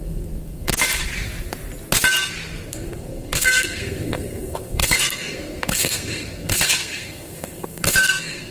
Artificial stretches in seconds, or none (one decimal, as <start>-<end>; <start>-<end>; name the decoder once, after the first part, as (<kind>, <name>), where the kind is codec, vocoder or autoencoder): 0.0-0.7 (codec, SNAC); 2.7-8.5